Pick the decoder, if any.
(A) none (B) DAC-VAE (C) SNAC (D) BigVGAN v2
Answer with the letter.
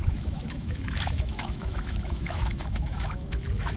B